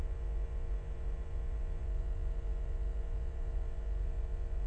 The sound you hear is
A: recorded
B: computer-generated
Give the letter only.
B